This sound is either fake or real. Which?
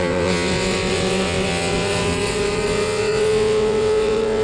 fake